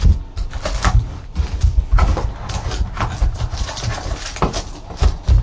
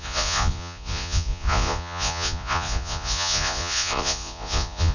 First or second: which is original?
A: first